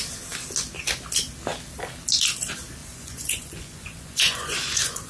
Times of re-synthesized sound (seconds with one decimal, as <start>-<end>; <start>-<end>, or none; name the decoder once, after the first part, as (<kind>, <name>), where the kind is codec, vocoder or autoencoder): 2.8-5.1 (vocoder, Vocos)